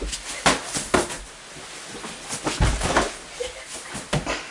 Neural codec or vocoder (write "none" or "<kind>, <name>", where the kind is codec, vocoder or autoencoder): none